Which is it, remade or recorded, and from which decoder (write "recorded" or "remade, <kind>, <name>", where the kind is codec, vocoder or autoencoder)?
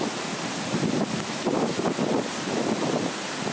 recorded